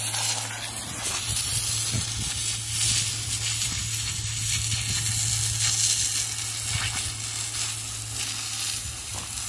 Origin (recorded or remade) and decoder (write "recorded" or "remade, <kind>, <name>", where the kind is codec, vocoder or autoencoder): recorded